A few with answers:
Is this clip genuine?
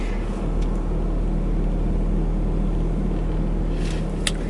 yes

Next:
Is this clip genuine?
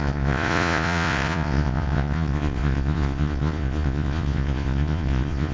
no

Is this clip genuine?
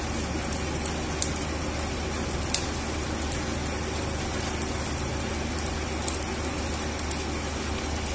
yes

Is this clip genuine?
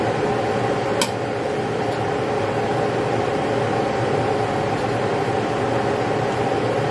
yes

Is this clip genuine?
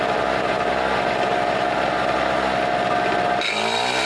yes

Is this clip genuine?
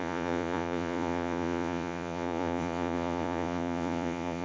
no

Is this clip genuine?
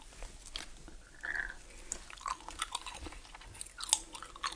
yes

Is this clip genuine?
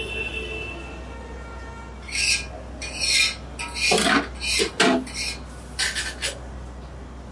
yes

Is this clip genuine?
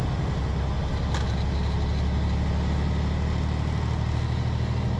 yes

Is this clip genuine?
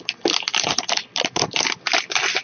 yes